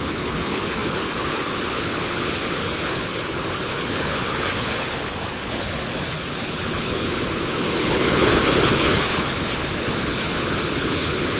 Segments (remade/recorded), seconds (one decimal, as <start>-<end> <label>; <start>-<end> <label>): 0.0-11.4 remade